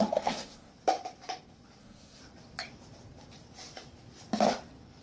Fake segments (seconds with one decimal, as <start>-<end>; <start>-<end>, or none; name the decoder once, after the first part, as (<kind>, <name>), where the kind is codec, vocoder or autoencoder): 0.0-0.7 (codec, SNAC); 1.8-2.2